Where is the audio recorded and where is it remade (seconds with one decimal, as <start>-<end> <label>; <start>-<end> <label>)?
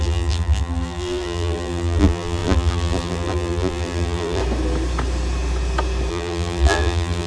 0.0-4.4 remade; 4.4-6.1 recorded; 6.1-7.3 remade